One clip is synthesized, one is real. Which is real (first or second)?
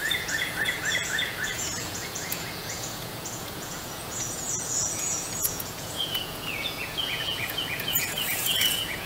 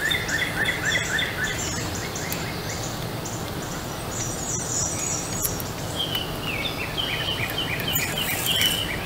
second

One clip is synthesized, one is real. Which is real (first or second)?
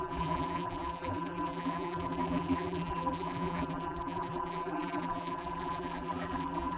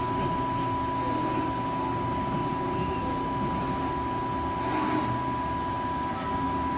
second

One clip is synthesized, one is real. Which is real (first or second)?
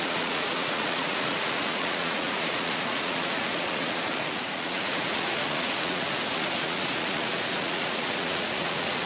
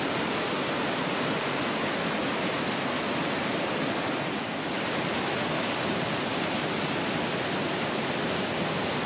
second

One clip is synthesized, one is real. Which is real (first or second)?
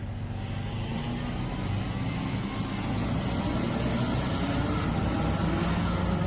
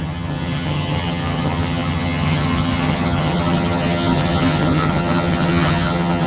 first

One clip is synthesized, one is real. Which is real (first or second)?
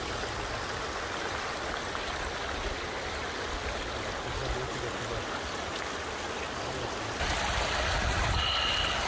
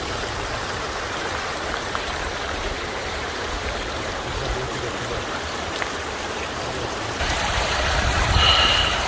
first